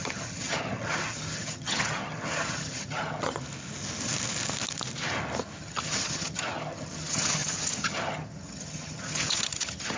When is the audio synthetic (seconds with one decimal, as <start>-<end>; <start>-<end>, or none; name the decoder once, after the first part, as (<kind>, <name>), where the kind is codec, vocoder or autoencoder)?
0.0-3.4 (vocoder, HiFi-GAN); 5.6-10.0